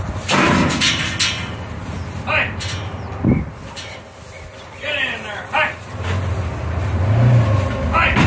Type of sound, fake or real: real